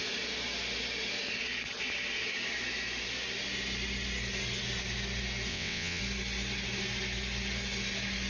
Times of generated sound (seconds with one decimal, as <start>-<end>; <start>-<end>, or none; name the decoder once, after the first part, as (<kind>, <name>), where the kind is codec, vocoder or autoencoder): 5.5-6.0 (vocoder, WaveNeXt)